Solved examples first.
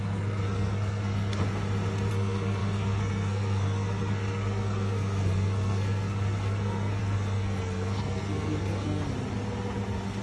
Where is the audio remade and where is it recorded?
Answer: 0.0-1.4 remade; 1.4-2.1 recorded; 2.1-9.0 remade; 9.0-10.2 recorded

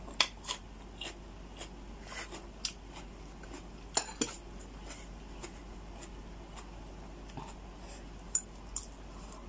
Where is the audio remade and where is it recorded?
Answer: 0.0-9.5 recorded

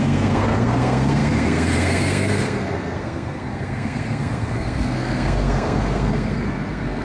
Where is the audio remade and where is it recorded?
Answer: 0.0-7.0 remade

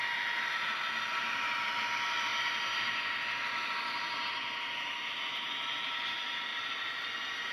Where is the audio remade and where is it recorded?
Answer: 0.0-7.5 recorded

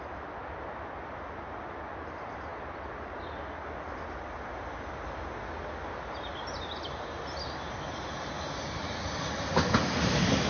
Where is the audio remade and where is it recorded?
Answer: 0.0-10.5 recorded

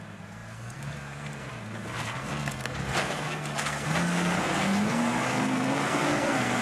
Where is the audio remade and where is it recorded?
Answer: 0.0-6.6 remade

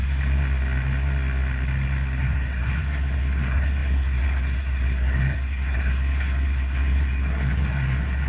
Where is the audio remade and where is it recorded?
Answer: 0.0-2.2 recorded; 2.2-8.3 remade